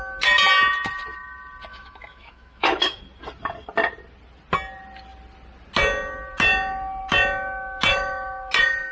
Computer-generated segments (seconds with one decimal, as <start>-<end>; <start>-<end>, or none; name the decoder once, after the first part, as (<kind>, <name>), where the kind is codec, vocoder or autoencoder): 1.7-3.0 (autoencoder, DAC-VAE); 7.9-8.5